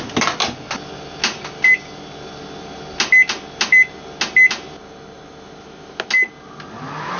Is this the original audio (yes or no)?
yes